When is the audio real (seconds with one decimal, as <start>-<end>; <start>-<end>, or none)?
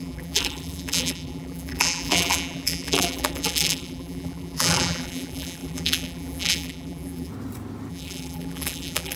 7.3-7.9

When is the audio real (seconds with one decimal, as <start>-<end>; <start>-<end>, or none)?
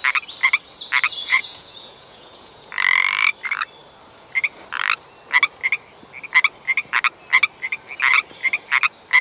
0.0-1.2; 2.7-9.2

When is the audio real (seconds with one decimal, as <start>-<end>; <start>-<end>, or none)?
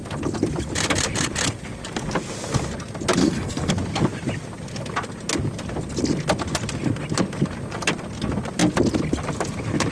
0.0-3.2; 3.7-9.9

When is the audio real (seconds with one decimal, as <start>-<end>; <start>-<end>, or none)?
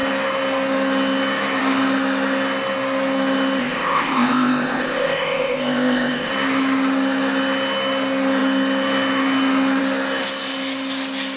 0.0-3.6; 6.3-11.4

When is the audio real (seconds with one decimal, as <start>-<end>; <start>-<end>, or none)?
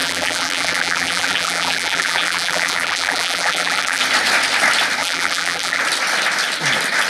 4.0-5.0; 5.8-7.1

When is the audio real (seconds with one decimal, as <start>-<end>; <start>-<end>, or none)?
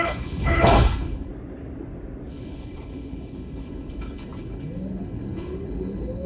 1.3-2.3